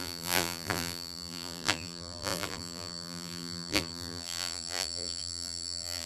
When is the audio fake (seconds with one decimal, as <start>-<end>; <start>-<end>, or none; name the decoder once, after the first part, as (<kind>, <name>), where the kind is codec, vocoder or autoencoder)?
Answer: 0.0-6.1 (vocoder, BigVGAN v2)